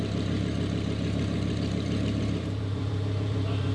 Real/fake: fake